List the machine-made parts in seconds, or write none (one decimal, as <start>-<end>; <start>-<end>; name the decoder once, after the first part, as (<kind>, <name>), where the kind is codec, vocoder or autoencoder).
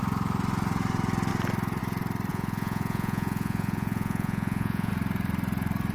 2.3-4.9 (vocoder, Vocos)